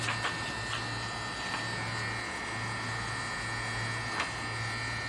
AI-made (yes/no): no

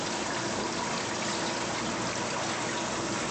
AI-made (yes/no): no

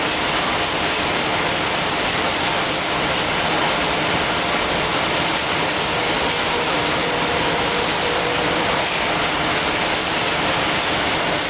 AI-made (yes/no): no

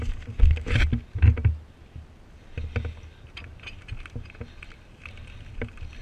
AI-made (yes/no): no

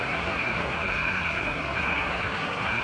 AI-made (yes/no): yes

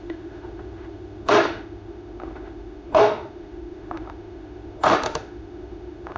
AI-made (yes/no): yes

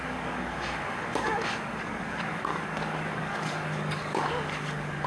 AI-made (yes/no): yes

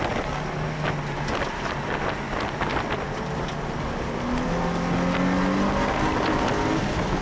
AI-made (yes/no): no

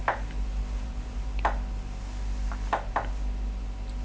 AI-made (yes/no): no